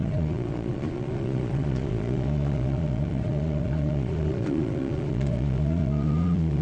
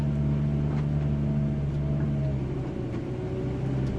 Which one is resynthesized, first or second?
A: first